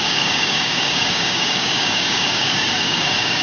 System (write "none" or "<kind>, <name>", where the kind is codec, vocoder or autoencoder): codec, DAC